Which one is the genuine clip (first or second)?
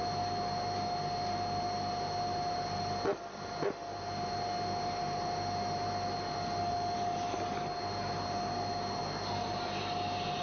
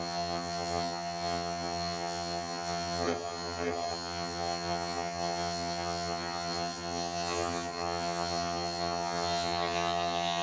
first